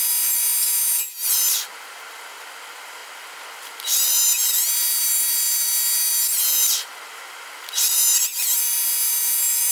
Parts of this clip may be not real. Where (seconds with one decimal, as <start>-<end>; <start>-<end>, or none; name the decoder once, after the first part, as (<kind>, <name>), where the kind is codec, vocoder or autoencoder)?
none

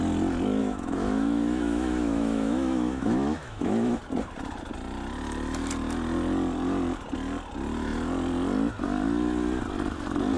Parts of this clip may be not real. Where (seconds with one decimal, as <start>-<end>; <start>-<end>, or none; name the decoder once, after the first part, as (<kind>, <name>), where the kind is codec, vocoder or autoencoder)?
0.6-4.0 (autoencoder, DAC-VAE)

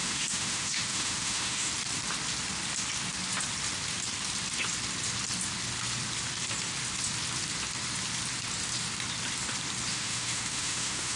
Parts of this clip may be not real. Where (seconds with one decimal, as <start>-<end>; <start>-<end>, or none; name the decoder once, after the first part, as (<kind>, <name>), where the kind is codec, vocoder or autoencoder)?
0.0-1.7 (autoencoder, DAC-VAE); 9.9-11.2